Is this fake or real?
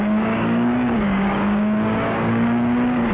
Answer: fake